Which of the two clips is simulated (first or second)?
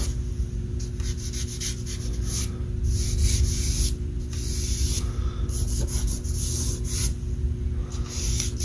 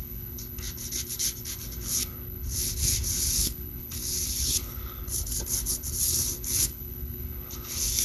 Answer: second